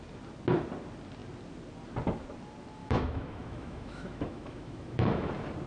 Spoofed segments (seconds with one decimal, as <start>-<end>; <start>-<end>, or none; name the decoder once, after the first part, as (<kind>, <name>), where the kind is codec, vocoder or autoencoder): 2.8-5.3 (autoencoder, DAC-VAE)

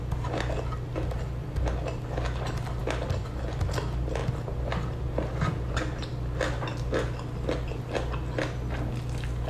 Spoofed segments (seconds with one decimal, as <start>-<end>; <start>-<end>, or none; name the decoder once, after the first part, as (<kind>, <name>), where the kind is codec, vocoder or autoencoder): none

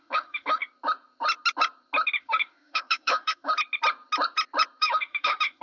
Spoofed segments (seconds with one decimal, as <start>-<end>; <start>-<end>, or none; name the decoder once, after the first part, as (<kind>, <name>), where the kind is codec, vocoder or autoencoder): 0.0-0.6 (autoencoder, DAC-VAE); 2.2-3.5; 4.8-5.6

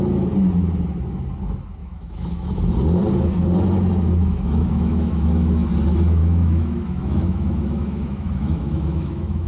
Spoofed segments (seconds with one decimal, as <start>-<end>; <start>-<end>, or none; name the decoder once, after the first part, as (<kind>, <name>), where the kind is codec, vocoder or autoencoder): 1.8-2.6 (autoencoder, DAC-VAE); 4.2-5.7; 6.2-9.5

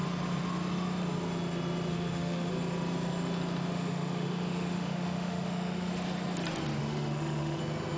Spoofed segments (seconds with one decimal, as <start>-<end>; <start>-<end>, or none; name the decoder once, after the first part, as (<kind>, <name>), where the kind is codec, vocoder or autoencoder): 1.9-2.5 (autoencoder, DAC-VAE); 3.7-5.9; 6.8-7.6